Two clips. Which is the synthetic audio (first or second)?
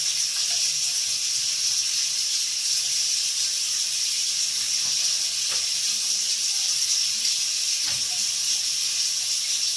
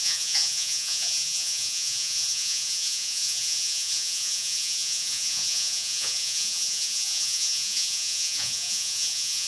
second